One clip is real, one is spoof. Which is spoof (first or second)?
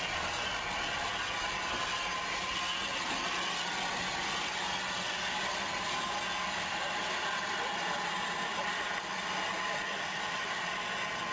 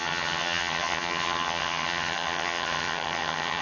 second